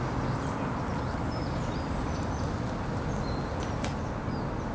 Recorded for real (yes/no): yes